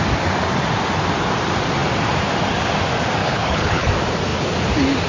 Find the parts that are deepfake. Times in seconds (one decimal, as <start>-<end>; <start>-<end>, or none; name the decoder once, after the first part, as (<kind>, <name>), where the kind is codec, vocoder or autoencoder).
3.2-3.9 (codec, HILCodec)